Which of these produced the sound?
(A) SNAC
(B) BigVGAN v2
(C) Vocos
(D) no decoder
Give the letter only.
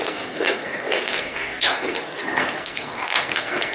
A